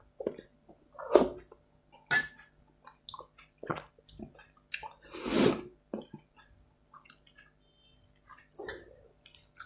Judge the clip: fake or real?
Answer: real